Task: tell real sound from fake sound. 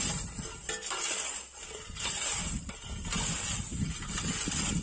real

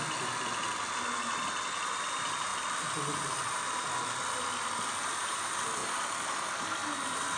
real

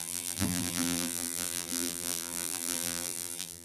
fake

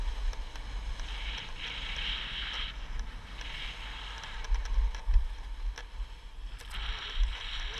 real